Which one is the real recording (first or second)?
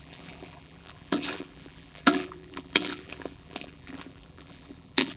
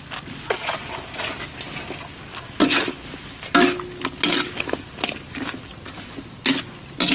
second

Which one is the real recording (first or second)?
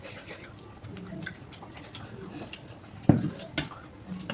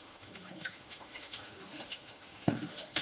first